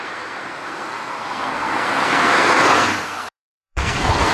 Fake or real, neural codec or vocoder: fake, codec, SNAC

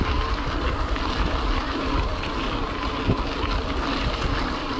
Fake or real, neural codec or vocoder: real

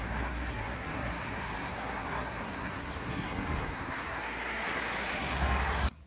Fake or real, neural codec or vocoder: fake, codec, SNAC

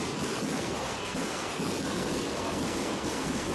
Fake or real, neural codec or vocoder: fake, codec, SNAC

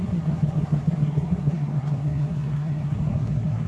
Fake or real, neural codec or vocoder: fake, codec, SNAC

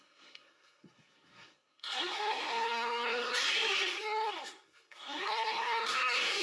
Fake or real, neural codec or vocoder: fake, codec, SNAC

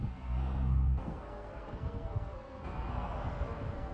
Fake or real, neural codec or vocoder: fake, codec, SNAC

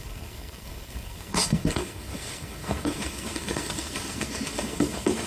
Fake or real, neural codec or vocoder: fake, codec, SNAC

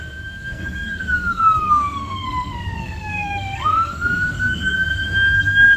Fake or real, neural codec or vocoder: fake, codec, SNAC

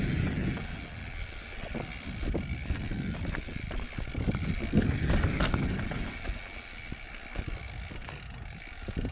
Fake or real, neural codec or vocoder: real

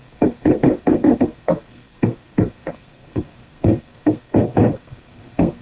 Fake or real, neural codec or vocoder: fake, codec, SNAC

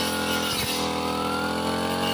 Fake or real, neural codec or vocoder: real